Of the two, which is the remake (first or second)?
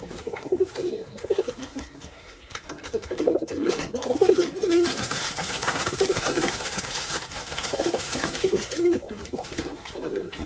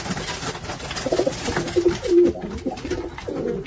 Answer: first